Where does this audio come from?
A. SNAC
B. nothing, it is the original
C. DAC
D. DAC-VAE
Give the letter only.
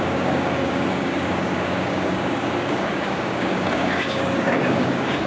C